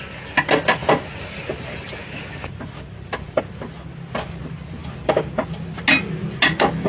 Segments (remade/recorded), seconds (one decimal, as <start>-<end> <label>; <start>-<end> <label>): 0.0-0.8 recorded; 0.8-3.4 remade; 3.4-4.8 recorded; 4.8-5.8 remade; 5.8-6.9 recorded